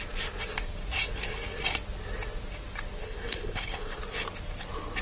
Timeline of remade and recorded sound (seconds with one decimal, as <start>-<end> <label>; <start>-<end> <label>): 0.0-3.0 recorded; 3.0-4.0 remade; 4.0-5.0 recorded